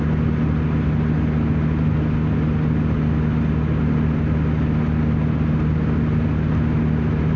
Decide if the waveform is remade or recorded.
recorded